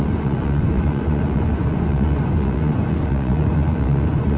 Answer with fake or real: fake